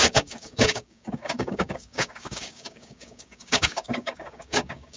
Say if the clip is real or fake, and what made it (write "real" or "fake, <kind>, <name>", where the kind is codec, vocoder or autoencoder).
fake, codec, DAC